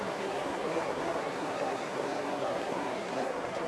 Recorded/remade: remade